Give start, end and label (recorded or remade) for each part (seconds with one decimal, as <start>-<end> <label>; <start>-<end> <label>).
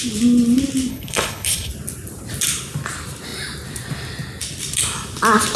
0.0-0.9 recorded; 0.9-1.7 remade; 1.7-5.6 recorded